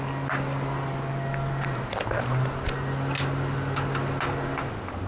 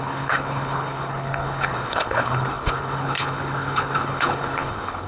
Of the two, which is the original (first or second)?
first